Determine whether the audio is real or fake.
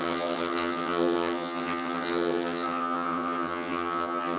fake